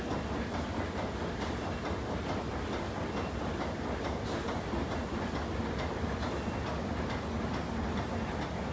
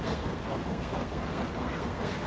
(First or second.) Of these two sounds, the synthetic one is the second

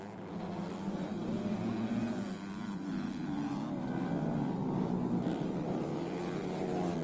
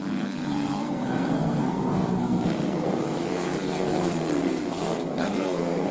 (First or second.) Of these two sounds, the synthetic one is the second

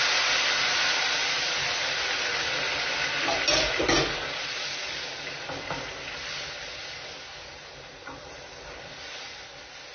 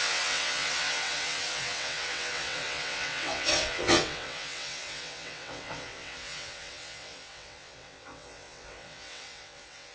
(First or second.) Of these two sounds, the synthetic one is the second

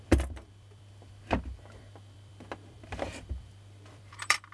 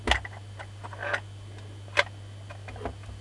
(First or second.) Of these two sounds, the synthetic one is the first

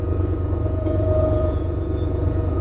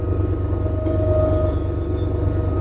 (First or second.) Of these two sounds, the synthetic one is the first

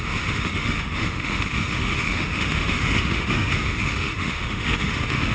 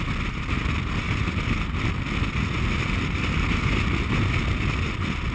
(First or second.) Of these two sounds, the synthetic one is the first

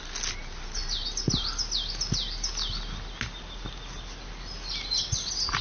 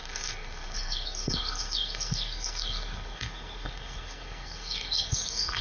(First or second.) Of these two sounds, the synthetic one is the second